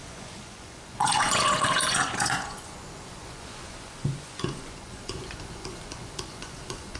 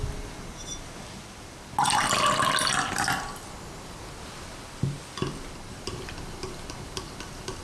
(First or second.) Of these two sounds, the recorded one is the second